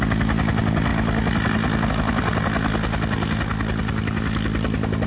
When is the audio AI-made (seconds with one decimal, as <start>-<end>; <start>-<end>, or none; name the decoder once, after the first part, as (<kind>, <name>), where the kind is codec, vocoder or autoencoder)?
none